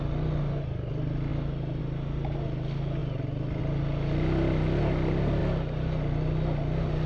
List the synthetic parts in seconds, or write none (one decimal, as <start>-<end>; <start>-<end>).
none